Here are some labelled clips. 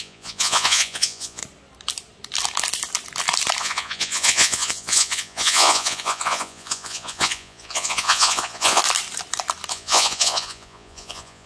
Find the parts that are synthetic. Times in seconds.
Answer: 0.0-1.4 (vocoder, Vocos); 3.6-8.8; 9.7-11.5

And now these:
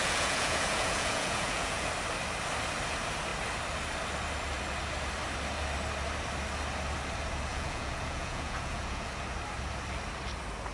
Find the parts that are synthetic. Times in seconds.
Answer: 0.0-1.9 (vocoder, Vocos); 7.5-9.1

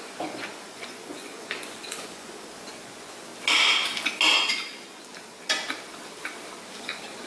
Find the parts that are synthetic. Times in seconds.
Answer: 0.0-3.3 (vocoder, Vocos); 4.5-5.1; 6.7-7.3

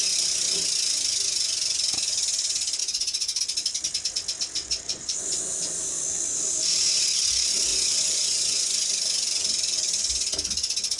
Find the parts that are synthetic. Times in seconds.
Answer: 2.8-3.4 (vocoder, Vocos); 4.6-5.5; 7.7-8.9

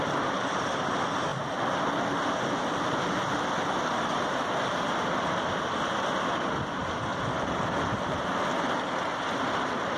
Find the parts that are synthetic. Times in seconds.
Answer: none

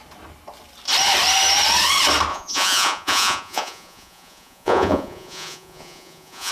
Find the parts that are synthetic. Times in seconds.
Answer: 2.3-6.5 (vocoder, Vocos)

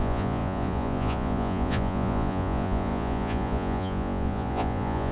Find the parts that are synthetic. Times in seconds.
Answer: 0.0-5.1 (vocoder, Vocos)